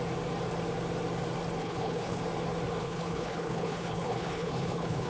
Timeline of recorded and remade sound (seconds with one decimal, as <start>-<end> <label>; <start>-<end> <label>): 0.0-1.6 recorded; 1.6-2.2 remade; 2.2-2.8 recorded; 2.8-5.1 remade